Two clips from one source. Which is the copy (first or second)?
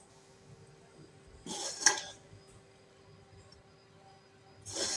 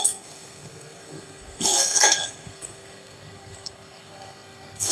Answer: second